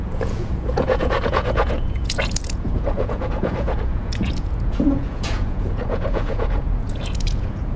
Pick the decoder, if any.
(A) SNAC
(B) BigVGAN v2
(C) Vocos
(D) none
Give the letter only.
C